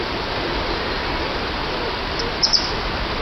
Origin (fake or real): real